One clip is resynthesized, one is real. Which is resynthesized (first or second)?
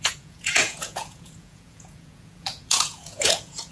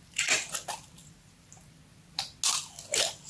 first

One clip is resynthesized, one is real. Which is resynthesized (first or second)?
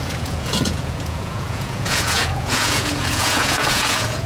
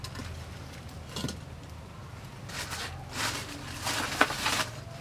first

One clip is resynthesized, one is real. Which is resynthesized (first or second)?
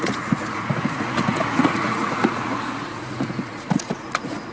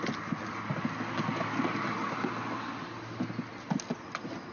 first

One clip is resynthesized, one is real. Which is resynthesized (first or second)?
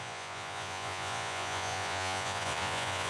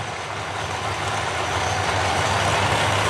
first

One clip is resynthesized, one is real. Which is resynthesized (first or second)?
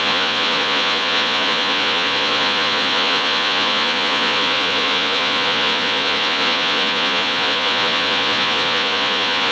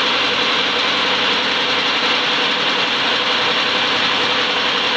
first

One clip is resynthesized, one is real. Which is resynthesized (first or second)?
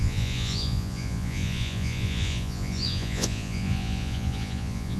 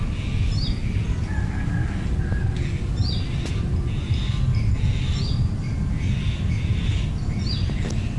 first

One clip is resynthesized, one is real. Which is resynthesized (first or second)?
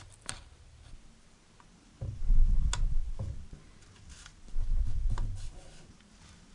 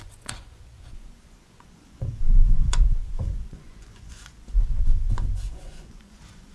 second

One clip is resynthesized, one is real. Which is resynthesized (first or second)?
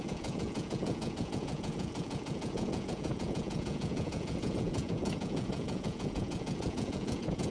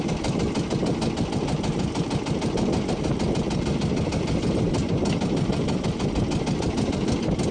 first